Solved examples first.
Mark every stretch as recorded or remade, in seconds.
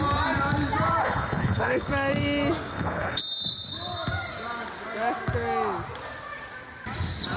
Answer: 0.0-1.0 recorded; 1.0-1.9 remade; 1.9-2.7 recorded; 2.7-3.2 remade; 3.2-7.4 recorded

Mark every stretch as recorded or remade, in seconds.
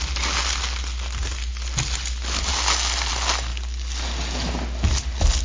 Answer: 0.0-5.4 recorded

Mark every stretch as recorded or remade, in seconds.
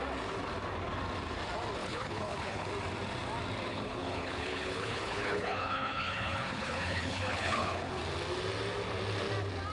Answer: 0.0-1.8 recorded; 1.8-2.7 remade; 2.7-3.7 recorded; 3.7-8.0 remade; 8.0-9.7 recorded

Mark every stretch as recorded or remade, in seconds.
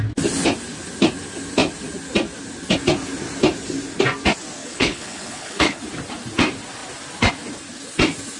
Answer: 0.0-4.6 recorded; 4.6-5.8 remade; 5.8-8.4 recorded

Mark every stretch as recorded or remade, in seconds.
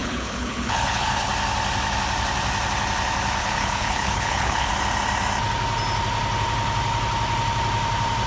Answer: 0.0-1.3 remade; 1.3-3.4 recorded; 3.4-4.7 remade; 4.7-8.3 recorded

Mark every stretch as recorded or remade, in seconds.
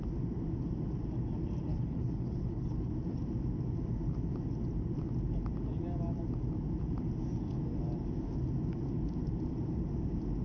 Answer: 0.0-1.7 recorded; 1.7-2.9 remade; 2.9-10.4 recorded